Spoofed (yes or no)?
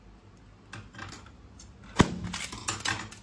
no